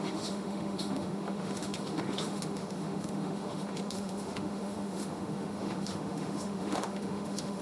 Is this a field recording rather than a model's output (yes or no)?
no